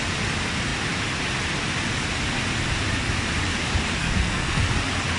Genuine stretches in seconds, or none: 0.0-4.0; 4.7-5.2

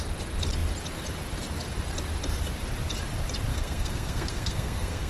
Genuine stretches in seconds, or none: 0.0-3.5

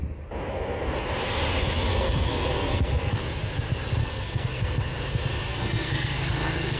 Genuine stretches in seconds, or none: 0.0-1.9; 3.2-4.0; 4.8-5.5

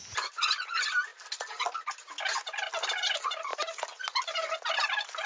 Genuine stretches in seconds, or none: 0.0-5.3

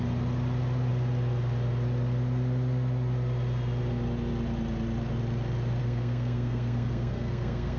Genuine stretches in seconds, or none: 0.0-5.8

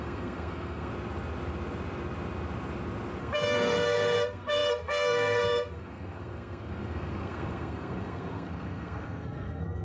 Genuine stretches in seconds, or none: 0.9-3.2